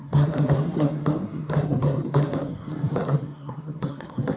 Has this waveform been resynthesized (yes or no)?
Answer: yes